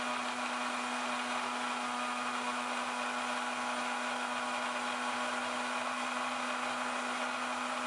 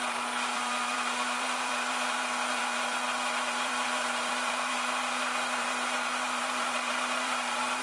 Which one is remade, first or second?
second